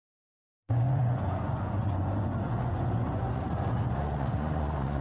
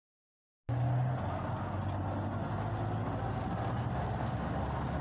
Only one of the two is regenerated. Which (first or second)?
first